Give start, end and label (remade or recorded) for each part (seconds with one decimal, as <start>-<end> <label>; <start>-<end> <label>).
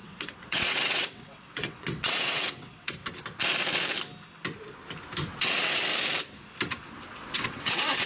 0.0-3.0 remade; 3.0-5.3 recorded; 5.3-5.8 remade; 5.8-7.1 recorded; 7.1-8.1 remade